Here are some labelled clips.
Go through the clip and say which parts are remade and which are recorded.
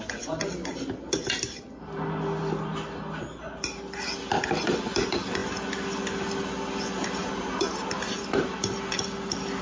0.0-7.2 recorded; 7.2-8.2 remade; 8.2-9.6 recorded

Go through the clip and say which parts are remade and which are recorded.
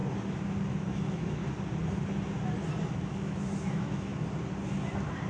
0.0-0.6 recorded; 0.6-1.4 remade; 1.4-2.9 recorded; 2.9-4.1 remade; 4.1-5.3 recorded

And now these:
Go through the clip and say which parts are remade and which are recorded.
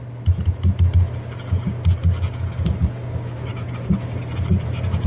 0.0-1.2 recorded; 1.2-4.2 remade; 4.2-5.1 recorded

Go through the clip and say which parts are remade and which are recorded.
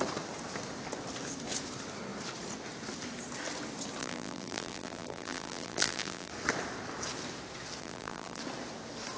0.0-4.0 recorded; 4.0-6.3 remade; 6.3-7.8 recorded; 7.8-8.4 remade; 8.4-9.2 recorded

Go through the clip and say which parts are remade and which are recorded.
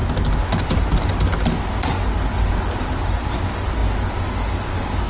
0.0-5.1 recorded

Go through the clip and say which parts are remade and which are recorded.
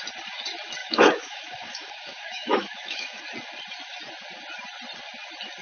0.0-0.8 recorded; 0.8-3.2 remade; 3.2-5.6 recorded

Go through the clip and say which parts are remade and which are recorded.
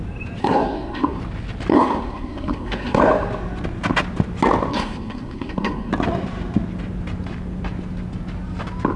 0.0-0.4 recorded; 0.4-1.2 remade; 1.2-1.7 recorded; 1.7-3.0 remade; 3.0-4.7 recorded; 4.7-5.9 remade; 5.9-9.0 recorded